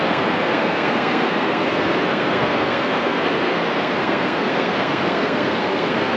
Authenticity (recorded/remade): remade